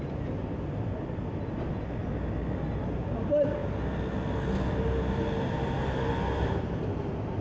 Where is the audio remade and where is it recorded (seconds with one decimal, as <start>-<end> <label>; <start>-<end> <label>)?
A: 0.0-7.4 recorded